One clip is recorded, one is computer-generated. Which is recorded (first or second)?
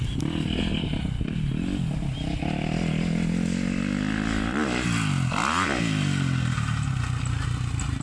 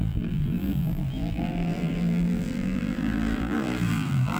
first